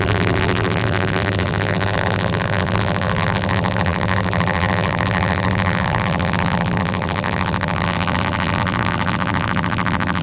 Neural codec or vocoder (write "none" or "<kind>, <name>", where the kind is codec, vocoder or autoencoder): vocoder, BigVGAN v2